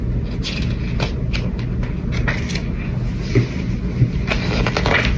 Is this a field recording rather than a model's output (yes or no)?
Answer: yes